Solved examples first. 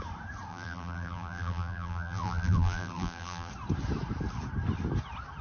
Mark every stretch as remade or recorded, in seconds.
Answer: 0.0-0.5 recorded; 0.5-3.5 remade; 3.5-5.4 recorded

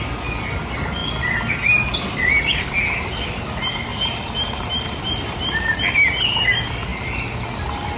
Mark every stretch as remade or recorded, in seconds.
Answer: 0.0-3.9 recorded; 3.9-5.8 remade; 5.8-8.0 recorded

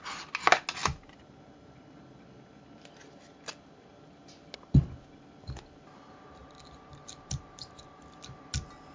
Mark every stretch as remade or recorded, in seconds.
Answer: 0.0-0.8 recorded; 0.8-1.8 remade; 1.8-6.4 recorded; 6.4-8.0 remade; 8.0-8.9 recorded

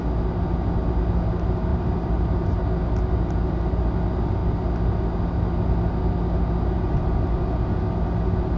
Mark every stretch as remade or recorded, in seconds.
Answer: 0.0-1.7 recorded; 1.7-2.6 remade; 2.6-8.6 recorded

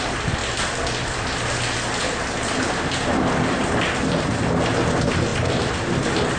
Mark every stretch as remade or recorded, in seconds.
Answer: 0.0-6.4 recorded